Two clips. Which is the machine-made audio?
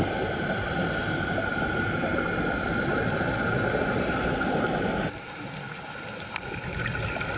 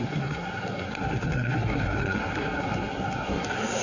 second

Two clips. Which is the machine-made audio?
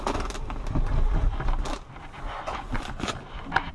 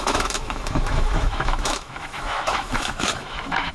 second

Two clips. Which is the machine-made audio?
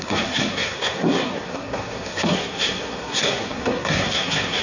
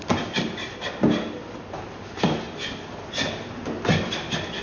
first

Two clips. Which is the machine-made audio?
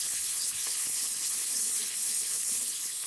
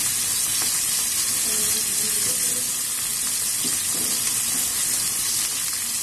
first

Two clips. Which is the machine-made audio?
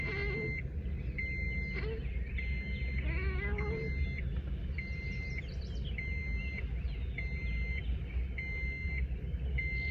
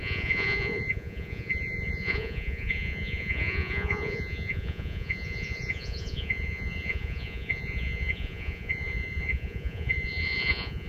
second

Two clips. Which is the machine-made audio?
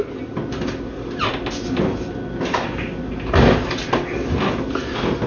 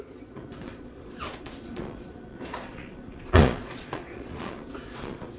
second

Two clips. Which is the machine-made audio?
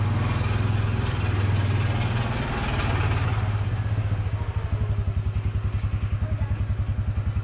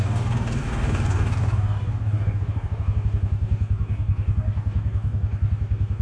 second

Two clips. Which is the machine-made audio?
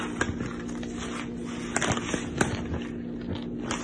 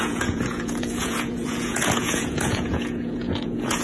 second